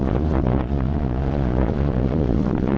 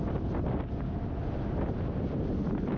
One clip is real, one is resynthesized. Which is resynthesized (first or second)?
first